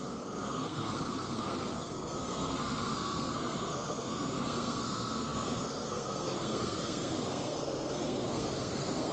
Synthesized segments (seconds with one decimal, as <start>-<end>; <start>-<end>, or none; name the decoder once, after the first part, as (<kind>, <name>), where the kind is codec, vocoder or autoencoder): 0.0-9.1 (codec, SNAC)

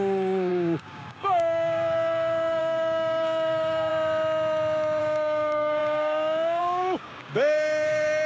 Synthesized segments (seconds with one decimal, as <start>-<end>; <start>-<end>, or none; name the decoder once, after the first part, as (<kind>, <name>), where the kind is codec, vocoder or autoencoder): 0.0-3.9 (codec, DAC); 5.0-8.3

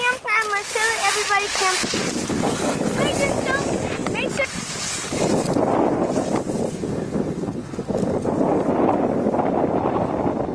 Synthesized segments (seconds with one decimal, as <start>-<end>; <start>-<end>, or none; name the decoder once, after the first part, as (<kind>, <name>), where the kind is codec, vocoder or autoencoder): none

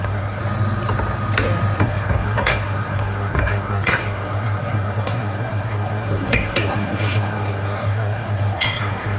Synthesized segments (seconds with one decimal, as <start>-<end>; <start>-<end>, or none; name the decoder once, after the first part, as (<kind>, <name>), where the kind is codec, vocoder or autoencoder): 0.0-0.4 (codec, SNAC); 1.8-9.2

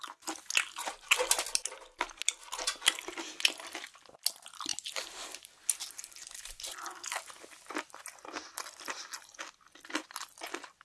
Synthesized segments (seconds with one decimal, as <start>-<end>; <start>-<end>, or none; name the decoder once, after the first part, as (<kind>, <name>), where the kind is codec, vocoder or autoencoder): none

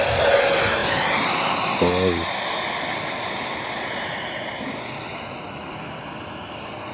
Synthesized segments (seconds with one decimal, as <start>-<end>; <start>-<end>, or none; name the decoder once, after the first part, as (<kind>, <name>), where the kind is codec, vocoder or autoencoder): none

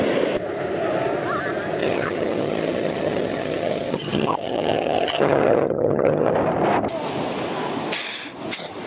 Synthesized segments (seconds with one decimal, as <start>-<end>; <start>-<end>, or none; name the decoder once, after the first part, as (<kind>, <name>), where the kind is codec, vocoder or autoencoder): 1.8-6.3 (vocoder, HiFi-GAN)